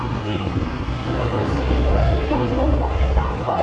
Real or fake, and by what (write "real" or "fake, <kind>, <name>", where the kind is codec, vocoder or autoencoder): fake, codec, SNAC